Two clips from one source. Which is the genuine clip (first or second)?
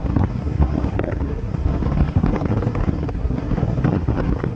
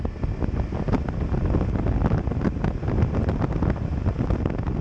second